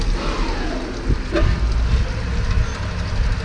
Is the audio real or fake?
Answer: real